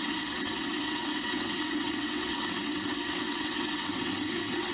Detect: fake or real fake